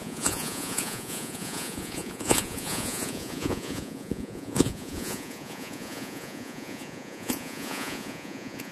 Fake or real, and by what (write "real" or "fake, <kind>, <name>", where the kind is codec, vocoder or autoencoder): fake, vocoder, Vocos